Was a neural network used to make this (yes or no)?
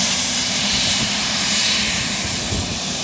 yes